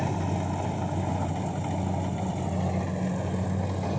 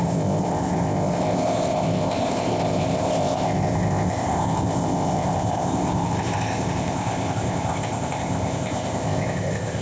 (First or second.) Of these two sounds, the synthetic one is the second